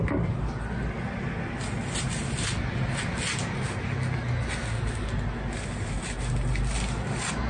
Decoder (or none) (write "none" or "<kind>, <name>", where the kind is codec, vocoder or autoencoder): none